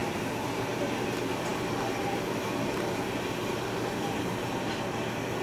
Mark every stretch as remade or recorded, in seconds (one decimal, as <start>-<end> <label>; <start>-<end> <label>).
0.0-5.4 recorded